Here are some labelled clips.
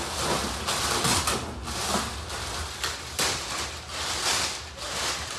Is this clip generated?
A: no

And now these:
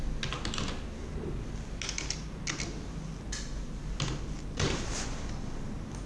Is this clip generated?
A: no